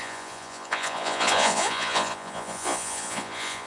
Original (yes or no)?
no